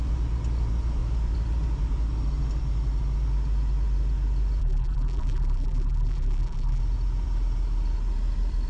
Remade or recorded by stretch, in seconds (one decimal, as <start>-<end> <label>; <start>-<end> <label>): 0.0-4.6 recorded; 4.6-6.8 remade; 6.8-8.7 recorded

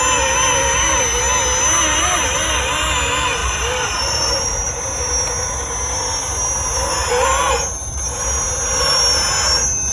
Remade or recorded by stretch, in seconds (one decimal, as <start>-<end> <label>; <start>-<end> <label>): 0.0-3.4 recorded; 3.4-4.7 remade; 4.7-9.9 recorded

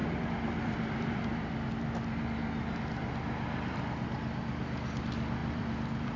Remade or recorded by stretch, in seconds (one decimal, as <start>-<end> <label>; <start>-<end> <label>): 0.0-1.7 remade; 1.7-5.4 recorded; 5.4-6.2 remade